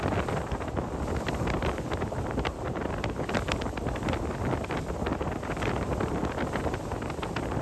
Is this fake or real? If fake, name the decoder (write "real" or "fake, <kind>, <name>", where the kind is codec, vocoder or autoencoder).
real